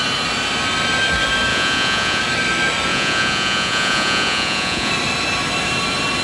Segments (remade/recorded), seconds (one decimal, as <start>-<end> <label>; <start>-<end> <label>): 0.0-1.5 recorded; 1.5-2.2 remade; 2.2-2.9 recorded; 2.9-4.9 remade; 4.9-6.2 recorded